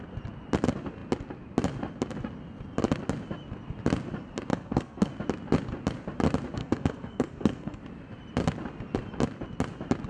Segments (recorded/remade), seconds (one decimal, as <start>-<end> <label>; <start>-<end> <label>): 0.0-4.5 recorded; 4.5-5.1 remade; 5.1-6.6 recorded; 6.6-7.8 remade; 7.8-10.1 recorded